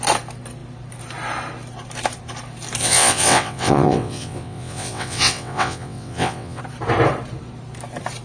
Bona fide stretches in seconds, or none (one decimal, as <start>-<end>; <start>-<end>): 0.0-2.8; 6.6-8.2